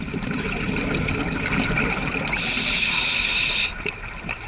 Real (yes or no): yes